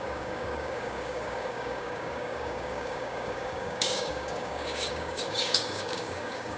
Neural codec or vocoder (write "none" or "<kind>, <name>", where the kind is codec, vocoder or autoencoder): codec, DAC